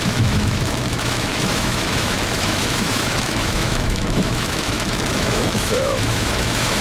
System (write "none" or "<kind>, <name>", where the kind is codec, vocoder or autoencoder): autoencoder, DAC-VAE